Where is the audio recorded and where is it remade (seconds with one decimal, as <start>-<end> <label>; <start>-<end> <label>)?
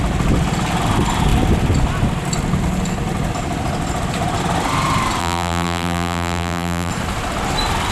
0.0-5.2 recorded; 5.2-6.9 remade; 6.9-7.9 recorded